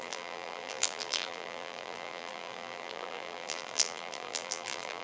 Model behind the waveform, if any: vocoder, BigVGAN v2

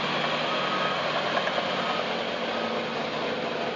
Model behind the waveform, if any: none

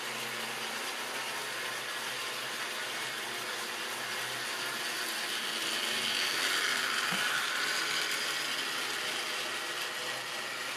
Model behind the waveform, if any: none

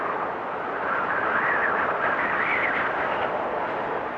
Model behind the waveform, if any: none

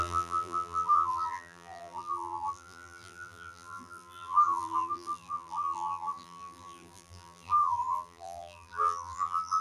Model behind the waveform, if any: vocoder, BigVGAN v2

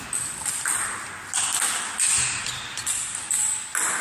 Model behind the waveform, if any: none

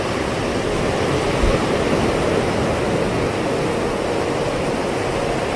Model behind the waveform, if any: none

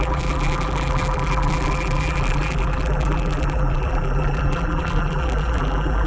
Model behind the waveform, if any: vocoder, BigVGAN v2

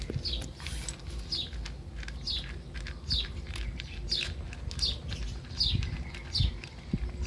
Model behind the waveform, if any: none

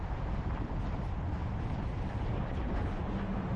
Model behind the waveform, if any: none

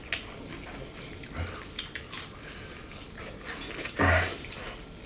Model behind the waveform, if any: none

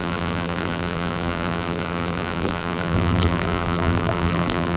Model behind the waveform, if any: vocoder, BigVGAN v2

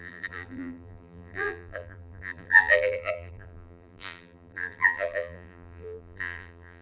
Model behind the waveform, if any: vocoder, BigVGAN v2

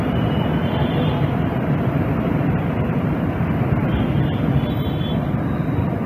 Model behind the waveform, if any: vocoder, BigVGAN v2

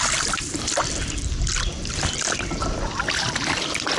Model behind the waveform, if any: vocoder, BigVGAN v2